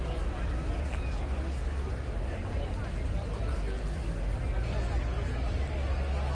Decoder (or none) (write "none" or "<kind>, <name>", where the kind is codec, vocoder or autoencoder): none